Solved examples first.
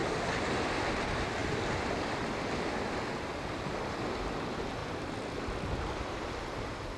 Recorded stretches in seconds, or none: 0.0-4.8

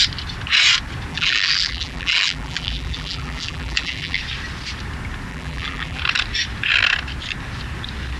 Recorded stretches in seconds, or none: 0.0-1.1; 4.2-5.3; 6.0-8.2

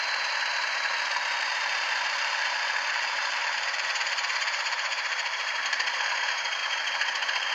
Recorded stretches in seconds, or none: 0.0-1.5; 6.0-6.6

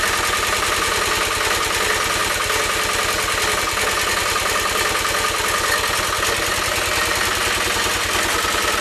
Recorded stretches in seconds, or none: 0.0-8.8

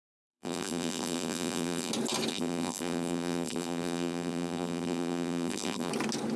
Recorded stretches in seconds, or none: 1.9-2.3; 5.9-6.4

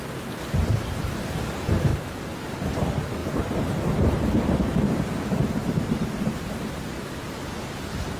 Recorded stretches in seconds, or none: 0.0-3.2; 3.8-5.6; 6.3-8.2